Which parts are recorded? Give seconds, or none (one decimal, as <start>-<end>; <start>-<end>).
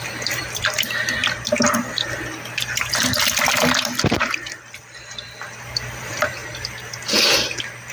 1.2-2.9; 6.4-7.9